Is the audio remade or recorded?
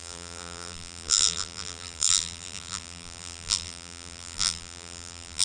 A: remade